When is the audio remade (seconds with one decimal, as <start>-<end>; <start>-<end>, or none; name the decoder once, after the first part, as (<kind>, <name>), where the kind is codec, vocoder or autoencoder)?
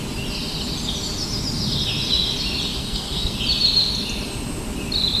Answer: 2.8-3.4 (codec, SNAC)